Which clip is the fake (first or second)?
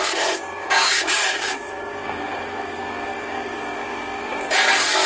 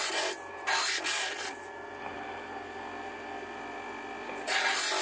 first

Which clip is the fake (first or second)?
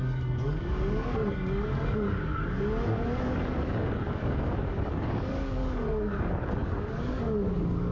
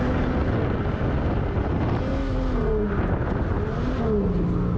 first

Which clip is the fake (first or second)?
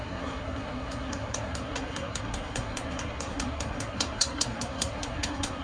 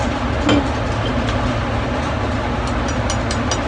first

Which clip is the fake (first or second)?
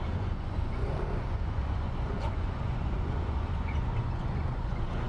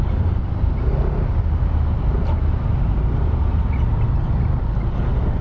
first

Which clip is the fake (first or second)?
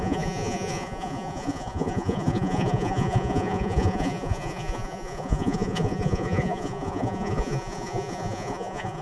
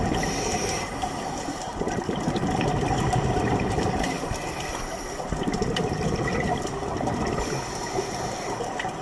first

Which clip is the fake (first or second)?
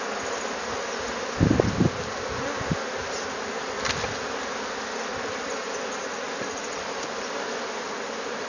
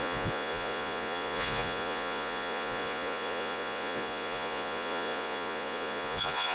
second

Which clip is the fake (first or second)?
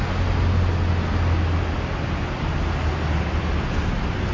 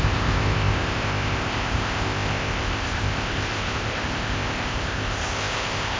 second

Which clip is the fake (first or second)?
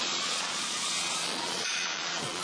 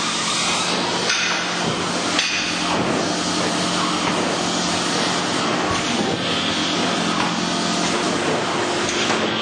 first